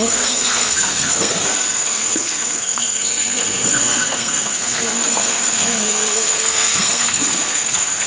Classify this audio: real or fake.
fake